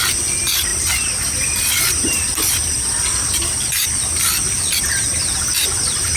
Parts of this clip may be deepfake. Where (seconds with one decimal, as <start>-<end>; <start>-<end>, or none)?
0.0-6.2